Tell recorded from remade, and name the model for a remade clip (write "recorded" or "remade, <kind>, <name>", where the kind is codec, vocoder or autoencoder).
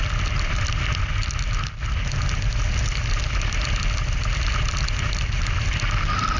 recorded